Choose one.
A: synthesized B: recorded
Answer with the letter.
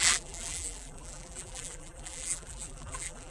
A